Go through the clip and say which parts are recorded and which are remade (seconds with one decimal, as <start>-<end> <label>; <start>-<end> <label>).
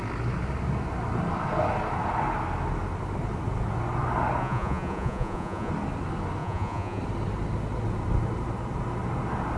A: 0.0-4.4 recorded; 4.4-5.7 remade; 5.7-6.4 recorded; 6.4-7.0 remade; 7.0-9.6 recorded